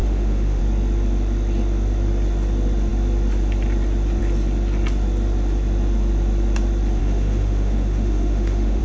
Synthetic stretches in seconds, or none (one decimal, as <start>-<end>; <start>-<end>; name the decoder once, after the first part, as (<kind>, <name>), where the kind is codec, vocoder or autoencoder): 0.0-0.6 (autoencoder, DAC-VAE); 7.0-8.8